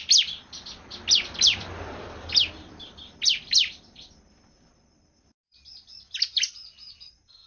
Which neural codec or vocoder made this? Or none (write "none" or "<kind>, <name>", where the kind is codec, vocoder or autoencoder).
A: none